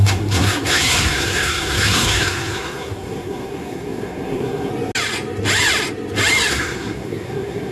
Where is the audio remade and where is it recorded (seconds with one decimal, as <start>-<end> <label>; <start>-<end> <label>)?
0.0-4.7 remade; 4.7-6.5 recorded; 6.5-7.7 remade